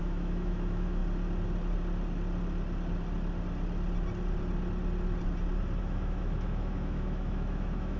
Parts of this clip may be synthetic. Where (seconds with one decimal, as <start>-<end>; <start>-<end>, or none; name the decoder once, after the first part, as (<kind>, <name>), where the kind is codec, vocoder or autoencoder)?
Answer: 0.0-1.0 (autoencoder, DAC-VAE); 5.8-8.0